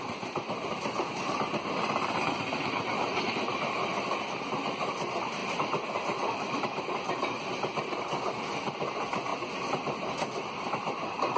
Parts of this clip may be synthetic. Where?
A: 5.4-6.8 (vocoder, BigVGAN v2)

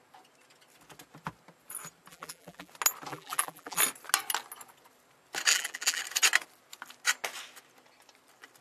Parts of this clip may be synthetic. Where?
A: 2.1-2.7 (vocoder, BigVGAN v2); 3.1-3.8; 5.5-6.0

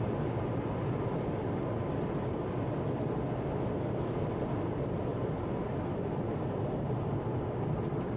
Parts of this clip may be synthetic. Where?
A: 5.1-7.2 (vocoder, BigVGAN v2)

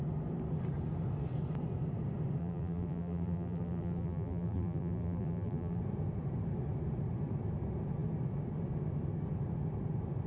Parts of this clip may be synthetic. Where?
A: 2.4-5.8 (vocoder, BigVGAN v2)

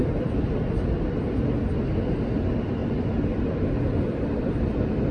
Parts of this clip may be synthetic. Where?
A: 0.0-1.4 (vocoder, BigVGAN v2); 2.8-5.1

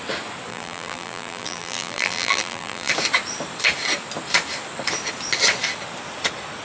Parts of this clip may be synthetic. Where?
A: 0.5-2.9 (vocoder, BigVGAN v2)

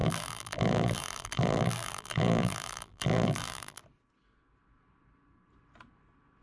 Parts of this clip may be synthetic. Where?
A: 0.0-3.8 (vocoder, BigVGAN v2)

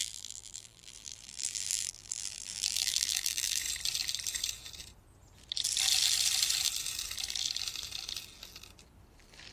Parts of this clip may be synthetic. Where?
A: 0.0-3.6 (vocoder, BigVGAN v2)